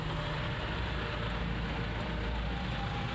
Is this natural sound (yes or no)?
yes